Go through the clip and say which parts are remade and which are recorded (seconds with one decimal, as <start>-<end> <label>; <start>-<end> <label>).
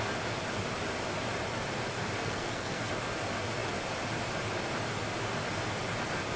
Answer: 0.0-2.2 recorded; 2.2-2.9 remade; 2.9-6.4 recorded